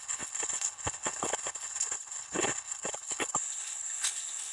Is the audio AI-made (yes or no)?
yes